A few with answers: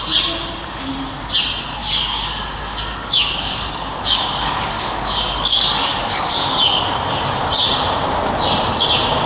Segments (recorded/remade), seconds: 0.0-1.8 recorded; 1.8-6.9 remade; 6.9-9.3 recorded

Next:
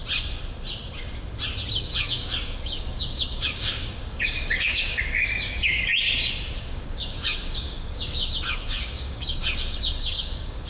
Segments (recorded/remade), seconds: 0.0-1.8 recorded; 1.8-5.9 remade; 5.9-6.6 recorded; 6.6-10.7 remade

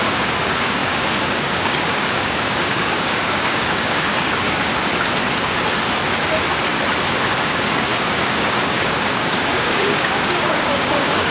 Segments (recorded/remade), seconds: 0.0-4.7 remade; 4.7-7.4 recorded; 7.4-11.3 remade

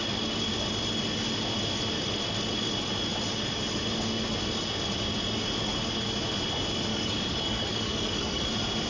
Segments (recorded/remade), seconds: 0.0-6.9 recorded; 6.9-8.5 remade; 8.5-8.9 recorded

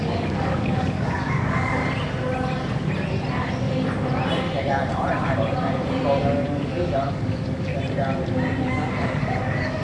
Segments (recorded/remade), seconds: 0.0-1.8 remade; 1.8-6.2 recorded; 6.2-7.7 remade; 7.7-8.6 recorded; 8.6-9.8 remade

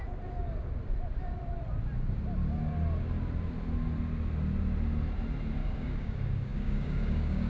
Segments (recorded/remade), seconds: 0.0-5.6 recorded; 5.6-7.5 remade

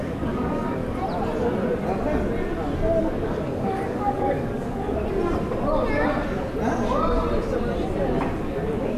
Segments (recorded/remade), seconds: 0.0-0.8 remade; 0.8-3.0 recorded; 3.0-5.0 remade; 5.0-8.5 recorded; 8.5-9.0 remade

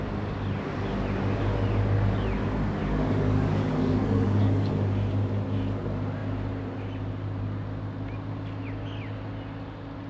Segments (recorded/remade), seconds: 0.0-2.8 recorded; 2.8-4.7 remade; 4.7-10.1 recorded